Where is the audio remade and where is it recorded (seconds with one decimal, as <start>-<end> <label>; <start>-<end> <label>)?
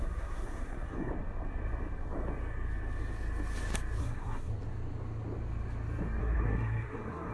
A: 0.0-1.1 remade; 1.1-4.0 recorded; 4.0-4.5 remade; 4.5-6.2 recorded; 6.2-7.3 remade